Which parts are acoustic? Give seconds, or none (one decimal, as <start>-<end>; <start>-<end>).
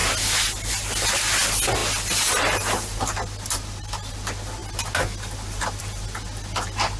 0.0-7.0